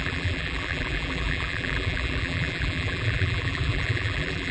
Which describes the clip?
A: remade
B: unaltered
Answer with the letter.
A